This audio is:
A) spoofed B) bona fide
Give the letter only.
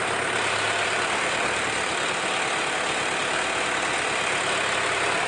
B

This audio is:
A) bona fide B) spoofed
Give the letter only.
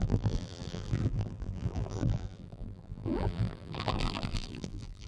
B